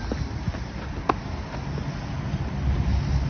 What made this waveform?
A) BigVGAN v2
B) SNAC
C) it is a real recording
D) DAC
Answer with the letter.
C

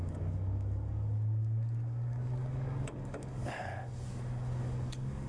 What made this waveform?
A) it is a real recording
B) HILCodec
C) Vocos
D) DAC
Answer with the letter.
D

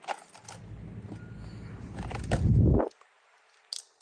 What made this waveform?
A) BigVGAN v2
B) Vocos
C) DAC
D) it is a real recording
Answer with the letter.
D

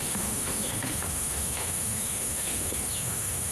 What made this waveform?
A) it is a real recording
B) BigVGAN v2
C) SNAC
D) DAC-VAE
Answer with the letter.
D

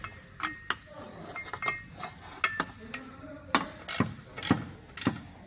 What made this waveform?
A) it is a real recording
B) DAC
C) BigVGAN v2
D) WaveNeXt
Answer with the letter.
A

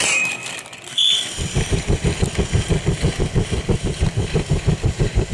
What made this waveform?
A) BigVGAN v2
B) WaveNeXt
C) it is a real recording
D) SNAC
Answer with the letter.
A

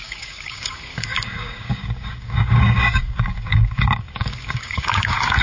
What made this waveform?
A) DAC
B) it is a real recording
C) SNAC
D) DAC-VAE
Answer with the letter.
A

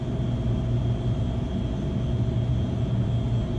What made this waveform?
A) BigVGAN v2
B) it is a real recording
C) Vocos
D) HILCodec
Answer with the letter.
B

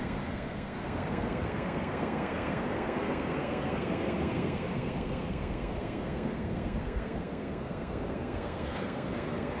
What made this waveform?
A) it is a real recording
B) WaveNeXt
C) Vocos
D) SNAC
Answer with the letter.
D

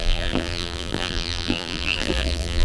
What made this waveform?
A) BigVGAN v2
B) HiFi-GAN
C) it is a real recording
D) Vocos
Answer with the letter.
A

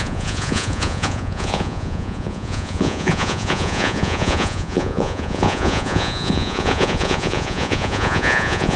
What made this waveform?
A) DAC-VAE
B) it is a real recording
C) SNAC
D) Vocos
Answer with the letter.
D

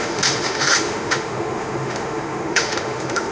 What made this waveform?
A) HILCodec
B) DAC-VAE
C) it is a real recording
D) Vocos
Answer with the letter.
B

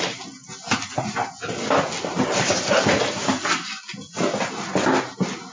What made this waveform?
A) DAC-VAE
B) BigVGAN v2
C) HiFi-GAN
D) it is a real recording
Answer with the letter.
D